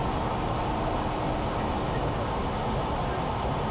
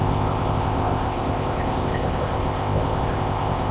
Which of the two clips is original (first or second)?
first